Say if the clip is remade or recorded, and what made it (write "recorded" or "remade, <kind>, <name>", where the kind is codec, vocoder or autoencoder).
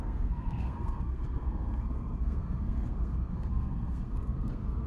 remade, codec, SNAC